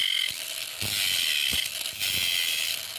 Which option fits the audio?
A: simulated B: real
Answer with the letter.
B